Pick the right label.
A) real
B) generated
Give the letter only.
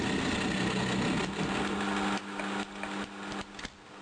A